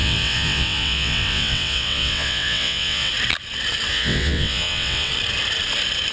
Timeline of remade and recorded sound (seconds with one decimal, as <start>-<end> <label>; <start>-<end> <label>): 0.0-3.1 remade; 3.1-3.9 recorded; 3.9-5.1 remade; 5.1-6.1 recorded